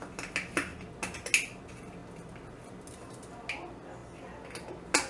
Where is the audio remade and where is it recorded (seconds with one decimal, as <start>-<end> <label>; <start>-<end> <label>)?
0.0-5.1 recorded

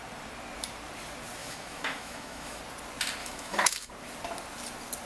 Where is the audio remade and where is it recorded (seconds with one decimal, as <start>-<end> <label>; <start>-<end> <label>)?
0.0-1.4 recorded; 1.4-2.6 remade; 2.6-3.2 recorded; 3.2-3.9 remade; 3.9-5.1 recorded

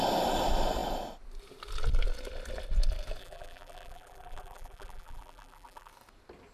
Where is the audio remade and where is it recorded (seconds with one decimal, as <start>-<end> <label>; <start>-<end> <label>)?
0.0-3.2 recorded; 3.2-5.9 remade; 5.9-6.5 recorded

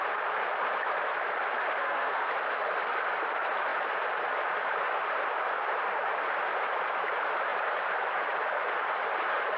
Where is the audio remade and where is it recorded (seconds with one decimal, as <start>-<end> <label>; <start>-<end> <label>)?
0.0-1.8 recorded; 1.8-2.3 remade; 2.3-9.6 recorded

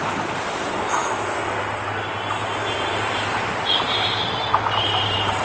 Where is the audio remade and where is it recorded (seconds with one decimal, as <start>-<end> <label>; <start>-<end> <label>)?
0.0-1.0 remade; 1.0-2.3 recorded; 2.3-5.4 remade

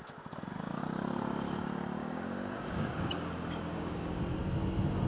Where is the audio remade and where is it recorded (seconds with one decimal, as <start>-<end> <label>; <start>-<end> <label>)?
0.0-2.0 recorded; 2.0-4.2 remade; 4.2-5.1 recorded

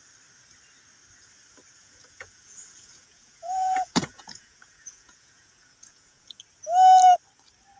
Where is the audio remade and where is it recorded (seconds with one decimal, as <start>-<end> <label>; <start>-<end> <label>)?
0.0-1.8 recorded; 1.8-6.4 remade; 6.4-7.8 recorded

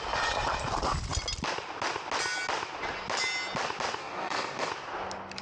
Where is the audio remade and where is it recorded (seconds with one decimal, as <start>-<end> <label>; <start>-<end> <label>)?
0.0-4.0 recorded; 4.0-4.7 remade; 4.7-5.4 recorded